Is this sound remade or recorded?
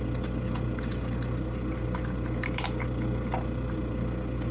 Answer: recorded